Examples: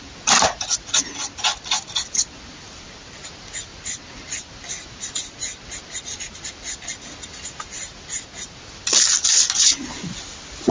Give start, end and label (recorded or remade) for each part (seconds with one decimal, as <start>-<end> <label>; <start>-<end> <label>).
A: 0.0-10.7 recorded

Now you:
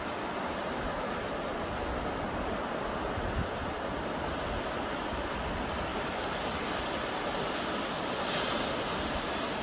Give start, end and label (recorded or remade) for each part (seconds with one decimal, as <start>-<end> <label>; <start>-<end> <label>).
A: 0.0-9.6 recorded

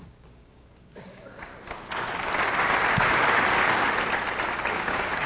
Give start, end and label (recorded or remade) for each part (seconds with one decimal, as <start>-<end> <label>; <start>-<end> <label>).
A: 0.0-1.5 remade; 1.5-4.7 recorded; 4.7-5.3 remade

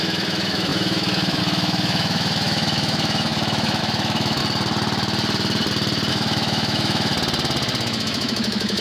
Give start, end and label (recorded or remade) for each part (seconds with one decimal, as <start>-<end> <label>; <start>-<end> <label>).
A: 0.0-4.4 remade; 4.4-6.1 recorded; 6.1-7.1 remade; 7.1-7.8 recorded; 7.8-8.8 remade

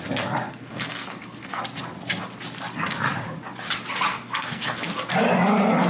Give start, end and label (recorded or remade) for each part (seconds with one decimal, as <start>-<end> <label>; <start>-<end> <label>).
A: 0.0-0.5 recorded; 0.5-1.6 remade; 1.6-4.1 recorded; 4.1-4.9 remade; 4.9-5.9 recorded

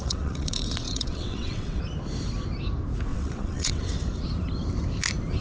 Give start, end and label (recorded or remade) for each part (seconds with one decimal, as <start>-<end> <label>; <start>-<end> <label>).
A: 0.0-1.8 remade; 1.8-3.1 recorded; 3.1-3.9 remade; 3.9-5.4 recorded